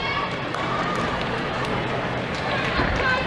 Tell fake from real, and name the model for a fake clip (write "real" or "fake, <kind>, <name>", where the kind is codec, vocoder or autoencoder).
fake, vocoder, BigVGAN v2